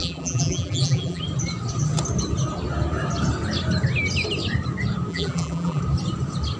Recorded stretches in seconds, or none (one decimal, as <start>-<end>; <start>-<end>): 1.2-5.1; 5.8-6.6